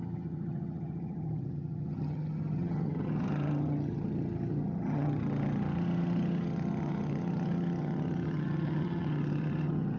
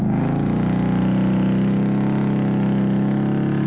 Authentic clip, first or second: second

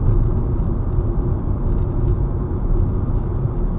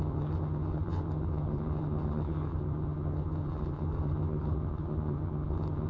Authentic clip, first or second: first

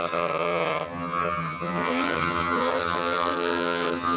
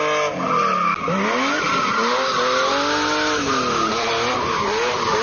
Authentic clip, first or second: second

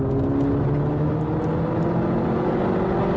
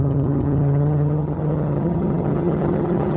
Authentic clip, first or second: first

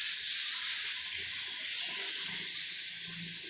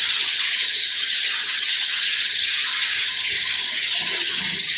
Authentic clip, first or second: first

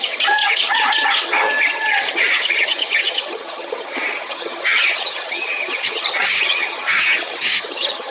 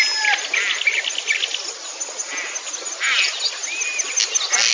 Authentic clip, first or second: second